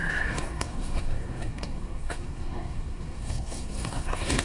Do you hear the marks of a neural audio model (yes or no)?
yes